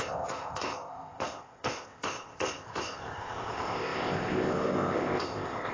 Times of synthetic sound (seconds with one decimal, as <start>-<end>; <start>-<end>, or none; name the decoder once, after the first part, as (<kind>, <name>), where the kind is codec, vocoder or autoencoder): 0.0-5.7 (codec, ZipCodec)